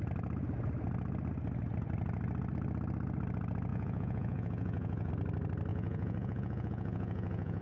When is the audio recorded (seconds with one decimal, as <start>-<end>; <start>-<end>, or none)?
0.0-3.7; 5.1-5.7